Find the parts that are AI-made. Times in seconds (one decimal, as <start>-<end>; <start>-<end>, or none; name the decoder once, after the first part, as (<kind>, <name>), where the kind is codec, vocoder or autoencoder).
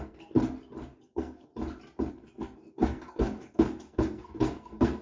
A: 0.0-0.4 (codec, SNAC); 1.0-1.5; 2.1-5.0